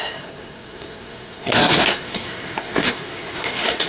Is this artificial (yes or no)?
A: yes